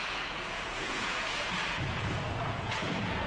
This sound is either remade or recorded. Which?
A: remade